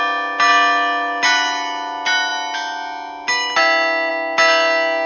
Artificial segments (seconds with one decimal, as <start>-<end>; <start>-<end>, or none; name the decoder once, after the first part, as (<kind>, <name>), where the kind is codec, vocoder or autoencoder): none